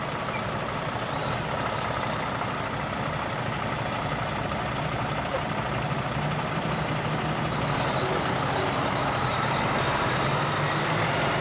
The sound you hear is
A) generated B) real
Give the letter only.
B